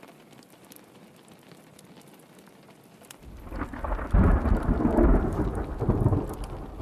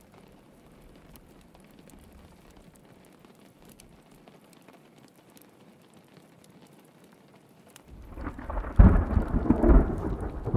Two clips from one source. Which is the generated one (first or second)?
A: second